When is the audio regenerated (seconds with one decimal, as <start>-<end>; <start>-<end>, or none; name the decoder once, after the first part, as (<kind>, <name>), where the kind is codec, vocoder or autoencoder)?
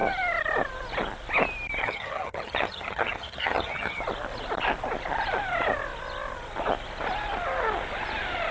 1.8-4.0 (vocoder, HiFi-GAN)